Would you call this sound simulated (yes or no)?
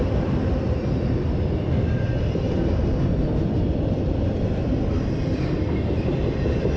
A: yes